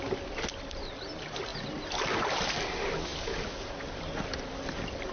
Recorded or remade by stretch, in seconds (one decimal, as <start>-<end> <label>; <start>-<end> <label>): 0.0-5.1 recorded